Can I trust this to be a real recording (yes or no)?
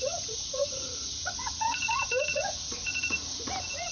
no